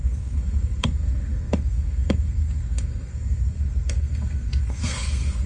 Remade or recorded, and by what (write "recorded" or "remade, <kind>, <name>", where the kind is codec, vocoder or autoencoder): remade, codec, SNAC